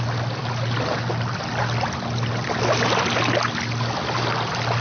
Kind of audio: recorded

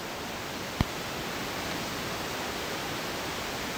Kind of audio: recorded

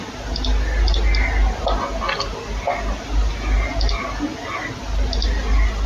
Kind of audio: recorded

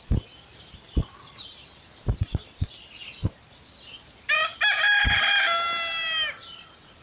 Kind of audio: recorded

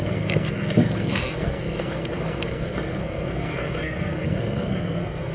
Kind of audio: remade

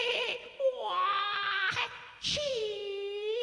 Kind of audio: remade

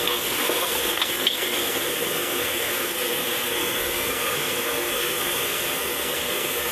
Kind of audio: remade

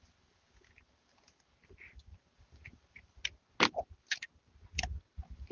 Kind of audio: recorded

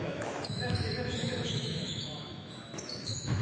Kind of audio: remade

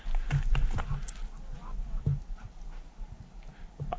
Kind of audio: recorded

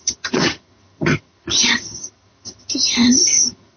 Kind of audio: remade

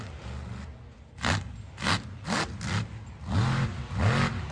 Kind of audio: recorded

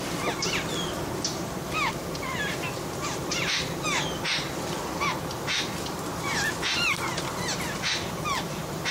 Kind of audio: recorded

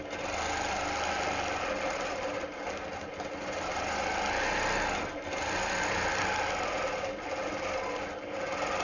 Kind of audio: recorded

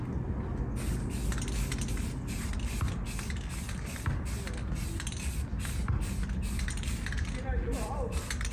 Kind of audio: recorded